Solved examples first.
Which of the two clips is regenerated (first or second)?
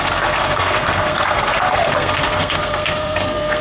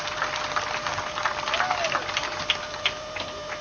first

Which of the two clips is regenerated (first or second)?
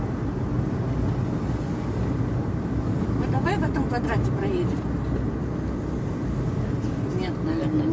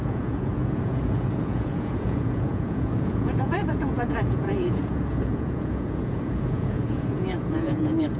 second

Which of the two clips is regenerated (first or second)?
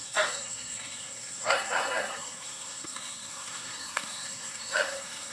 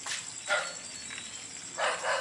first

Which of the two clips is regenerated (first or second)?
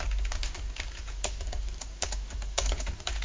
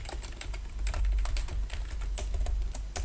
first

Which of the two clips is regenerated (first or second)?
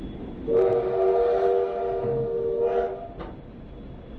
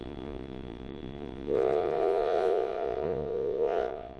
second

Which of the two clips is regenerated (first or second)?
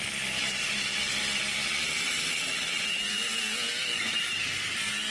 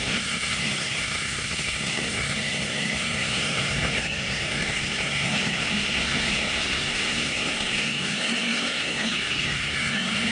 second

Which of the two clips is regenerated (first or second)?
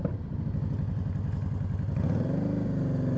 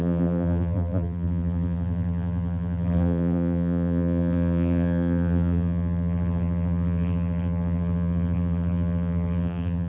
second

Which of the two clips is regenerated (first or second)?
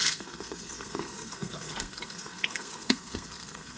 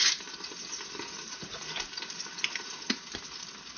first